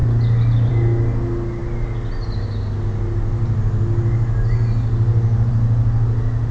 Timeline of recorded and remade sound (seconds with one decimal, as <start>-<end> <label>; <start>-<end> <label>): 0.0-6.5 recorded